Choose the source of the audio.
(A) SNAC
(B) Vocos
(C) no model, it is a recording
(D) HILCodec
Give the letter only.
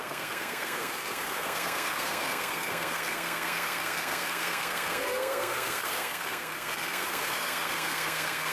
A